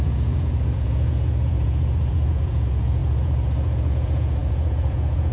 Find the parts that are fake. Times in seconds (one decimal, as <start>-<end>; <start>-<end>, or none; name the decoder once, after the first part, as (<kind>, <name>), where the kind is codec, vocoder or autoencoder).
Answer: 0.0-5.3 (vocoder, Vocos)

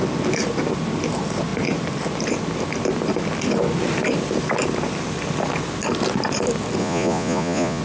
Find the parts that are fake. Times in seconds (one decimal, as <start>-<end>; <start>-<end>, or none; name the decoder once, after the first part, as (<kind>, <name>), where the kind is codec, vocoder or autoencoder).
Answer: 6.8-7.8 (vocoder, Vocos)